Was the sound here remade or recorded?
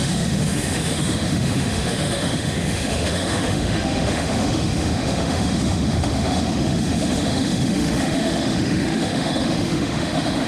remade